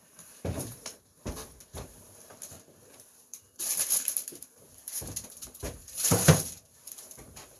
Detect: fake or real fake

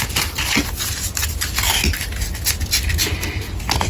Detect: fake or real real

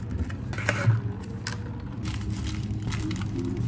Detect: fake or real real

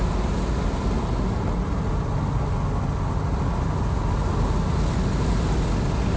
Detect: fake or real real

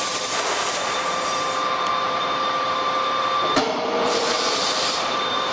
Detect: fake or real fake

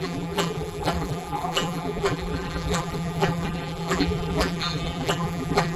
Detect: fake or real fake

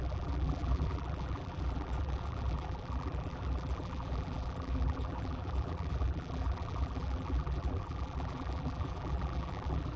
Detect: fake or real fake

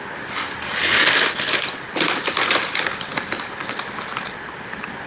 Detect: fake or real fake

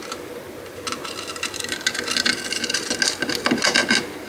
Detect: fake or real real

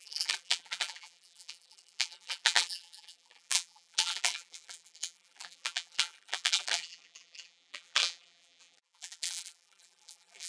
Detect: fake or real fake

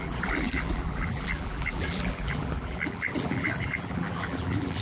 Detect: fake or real fake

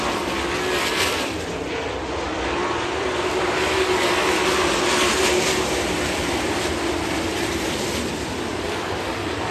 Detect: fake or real fake